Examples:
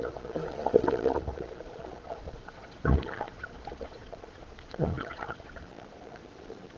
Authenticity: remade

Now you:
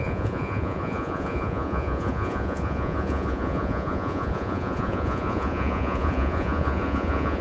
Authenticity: remade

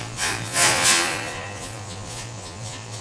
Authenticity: remade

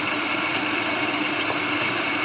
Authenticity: recorded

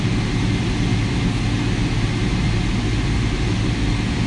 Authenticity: recorded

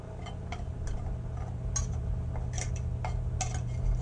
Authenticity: recorded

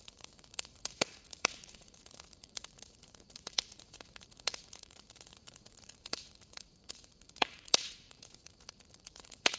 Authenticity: remade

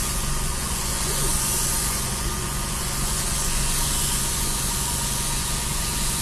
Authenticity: remade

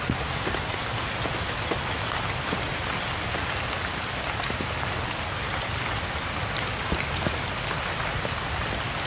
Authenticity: recorded